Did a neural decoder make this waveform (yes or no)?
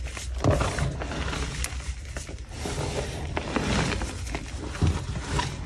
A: no